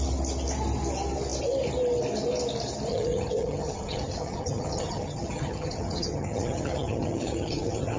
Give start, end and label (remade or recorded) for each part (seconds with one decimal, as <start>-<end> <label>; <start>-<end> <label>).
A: 0.0-2.9 recorded; 2.9-8.0 remade